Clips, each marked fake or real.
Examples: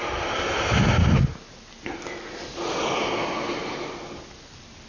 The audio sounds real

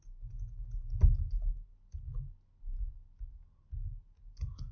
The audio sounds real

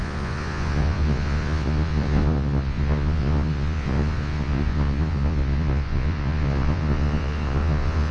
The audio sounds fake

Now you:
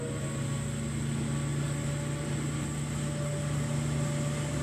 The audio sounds real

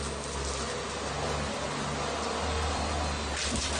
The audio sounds real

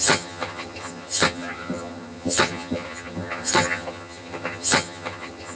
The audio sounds fake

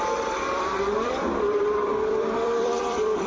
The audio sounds fake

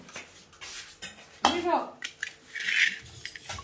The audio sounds real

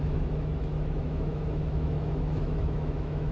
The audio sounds fake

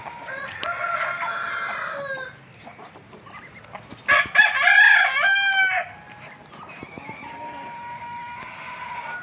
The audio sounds real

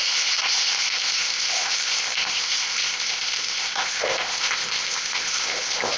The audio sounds fake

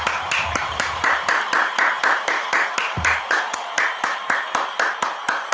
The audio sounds fake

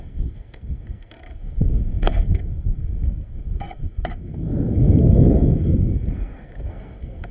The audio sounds fake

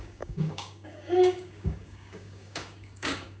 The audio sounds fake